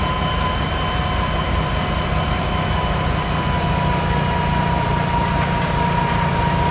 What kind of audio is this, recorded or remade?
recorded